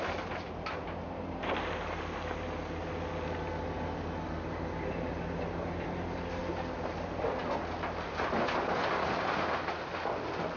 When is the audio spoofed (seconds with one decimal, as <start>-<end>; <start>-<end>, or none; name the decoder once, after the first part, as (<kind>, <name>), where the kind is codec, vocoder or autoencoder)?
none